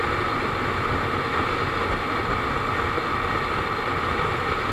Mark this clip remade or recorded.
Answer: recorded